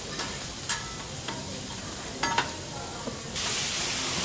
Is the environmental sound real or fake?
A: real